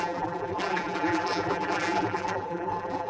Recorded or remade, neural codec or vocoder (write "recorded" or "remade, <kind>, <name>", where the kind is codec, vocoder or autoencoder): remade, vocoder, BigVGAN v2